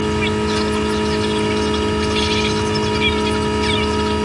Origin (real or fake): real